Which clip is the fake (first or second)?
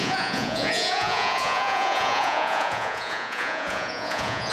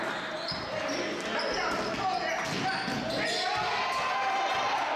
first